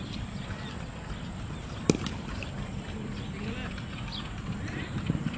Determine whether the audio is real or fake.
real